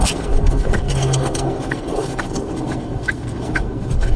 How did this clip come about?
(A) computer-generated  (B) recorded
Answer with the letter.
A